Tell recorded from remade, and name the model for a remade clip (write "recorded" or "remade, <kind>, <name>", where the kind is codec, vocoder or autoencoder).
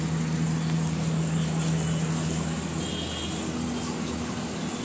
recorded